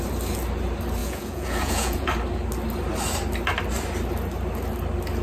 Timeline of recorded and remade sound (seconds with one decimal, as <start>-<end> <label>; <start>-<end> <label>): 0.0-1.0 recorded; 1.0-2.1 remade; 2.1-5.2 recorded